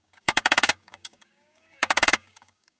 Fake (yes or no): yes